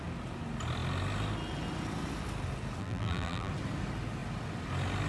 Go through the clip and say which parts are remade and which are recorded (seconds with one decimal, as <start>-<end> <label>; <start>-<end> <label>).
0.0-2.8 recorded; 2.8-3.5 remade; 3.5-5.1 recorded